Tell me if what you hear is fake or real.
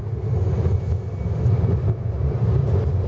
real